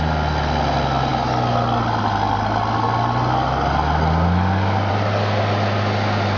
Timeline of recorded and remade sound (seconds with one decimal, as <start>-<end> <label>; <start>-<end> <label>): 0.0-6.4 recorded